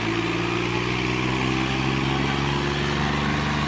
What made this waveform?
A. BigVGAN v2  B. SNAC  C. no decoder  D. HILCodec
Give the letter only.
C